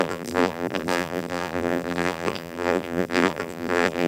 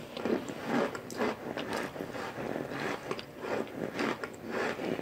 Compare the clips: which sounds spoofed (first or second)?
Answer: first